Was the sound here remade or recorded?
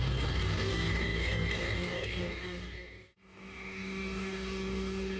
remade